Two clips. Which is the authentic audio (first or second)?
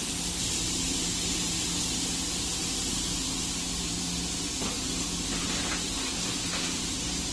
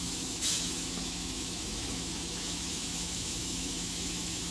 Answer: first